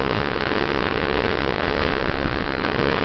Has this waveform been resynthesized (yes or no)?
yes